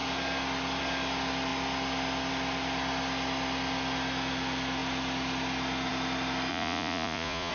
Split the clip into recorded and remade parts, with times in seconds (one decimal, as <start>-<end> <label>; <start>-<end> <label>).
0.0-6.5 recorded; 6.5-7.5 remade